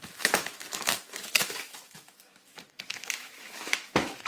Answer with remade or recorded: remade